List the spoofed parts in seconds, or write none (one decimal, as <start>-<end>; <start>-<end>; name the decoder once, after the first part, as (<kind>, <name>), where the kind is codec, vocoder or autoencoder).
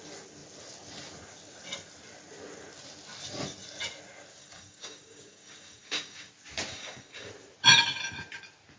4.4-6.3 (codec, DAC); 6.7-7.3